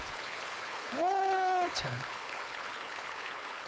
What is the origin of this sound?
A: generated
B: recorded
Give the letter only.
A